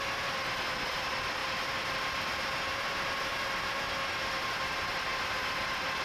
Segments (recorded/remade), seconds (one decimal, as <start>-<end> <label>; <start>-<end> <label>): 0.0-1.4 recorded; 1.4-2.6 remade; 2.6-3.3 recorded; 3.3-3.9 remade; 3.9-6.0 recorded